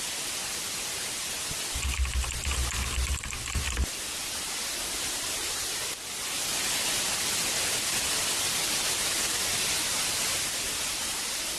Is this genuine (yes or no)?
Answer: no